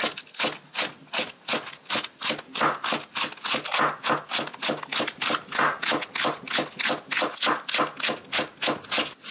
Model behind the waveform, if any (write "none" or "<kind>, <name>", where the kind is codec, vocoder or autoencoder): none